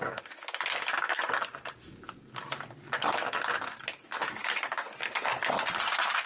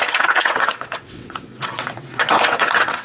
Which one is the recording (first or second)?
first